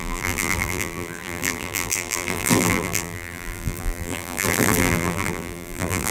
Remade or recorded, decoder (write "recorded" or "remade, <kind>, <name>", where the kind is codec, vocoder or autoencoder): remade, vocoder, BigVGAN v2